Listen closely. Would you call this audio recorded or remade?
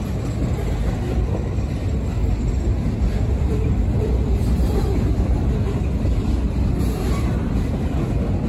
recorded